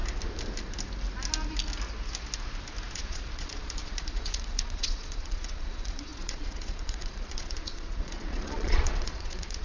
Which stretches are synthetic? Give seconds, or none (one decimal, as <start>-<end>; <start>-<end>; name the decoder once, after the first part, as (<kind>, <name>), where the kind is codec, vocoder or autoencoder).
2.9-9.6 (vocoder, Vocos)